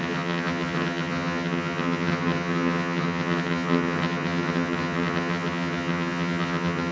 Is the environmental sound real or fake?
fake